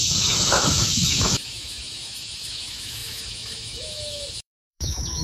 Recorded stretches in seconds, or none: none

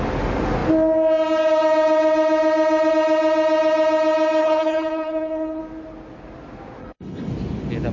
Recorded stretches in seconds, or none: 0.0-4.4; 5.6-6.8; 7.3-7.9

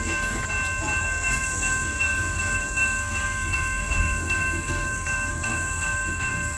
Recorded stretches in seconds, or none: 0.4-1.0

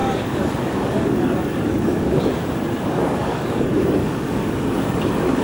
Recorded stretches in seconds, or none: 2.3-2.9

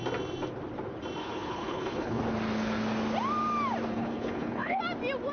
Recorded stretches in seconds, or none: 0.0-1.2; 2.2-3.9; 4.8-5.3

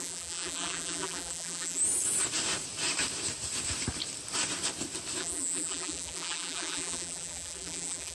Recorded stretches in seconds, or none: 1.8-5.2

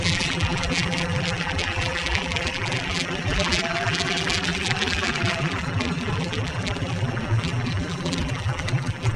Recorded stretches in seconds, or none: none